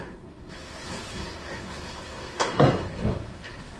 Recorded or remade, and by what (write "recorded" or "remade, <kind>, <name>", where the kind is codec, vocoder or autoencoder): remade, codec, SNAC